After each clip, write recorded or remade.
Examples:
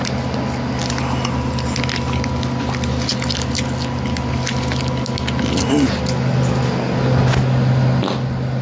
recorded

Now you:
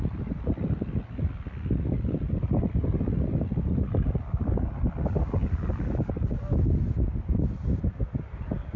recorded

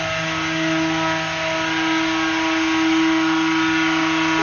recorded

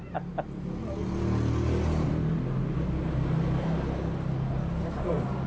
recorded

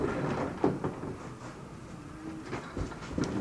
recorded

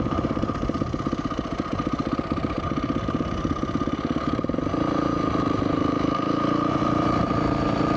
remade